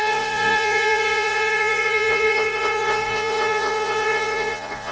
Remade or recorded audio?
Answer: remade